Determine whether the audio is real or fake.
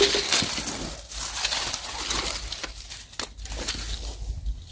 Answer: real